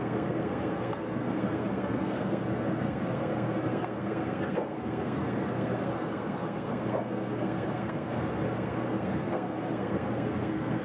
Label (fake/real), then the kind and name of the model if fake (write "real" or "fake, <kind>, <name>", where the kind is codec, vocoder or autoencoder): fake, codec, SNAC